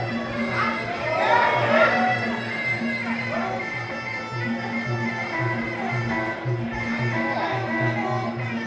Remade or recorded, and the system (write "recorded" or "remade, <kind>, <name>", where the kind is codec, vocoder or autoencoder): recorded